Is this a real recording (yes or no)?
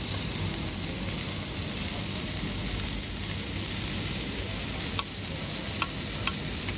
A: yes